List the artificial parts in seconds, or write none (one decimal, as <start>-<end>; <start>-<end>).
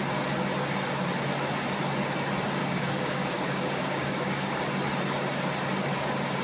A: 2.6-4.6